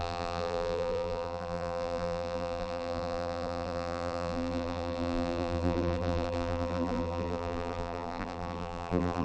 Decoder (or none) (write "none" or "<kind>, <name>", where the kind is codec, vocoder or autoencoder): vocoder, BigVGAN v2